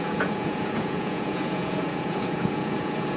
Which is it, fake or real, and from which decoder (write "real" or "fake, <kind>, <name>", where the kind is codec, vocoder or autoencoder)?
fake, vocoder, Vocos